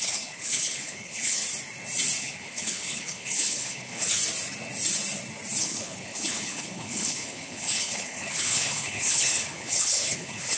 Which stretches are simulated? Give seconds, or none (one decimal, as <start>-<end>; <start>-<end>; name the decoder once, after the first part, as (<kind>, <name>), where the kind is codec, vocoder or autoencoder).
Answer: 0.0-1.4 (codec, HILCodec); 2.2-4.2; 5.6-10.6